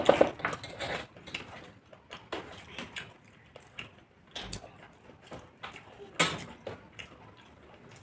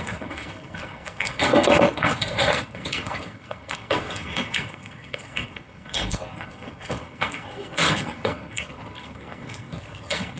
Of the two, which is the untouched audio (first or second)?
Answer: first